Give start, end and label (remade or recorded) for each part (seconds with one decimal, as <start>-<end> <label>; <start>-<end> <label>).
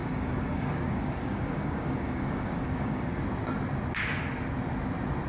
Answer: 0.0-3.2 remade; 3.2-5.3 recorded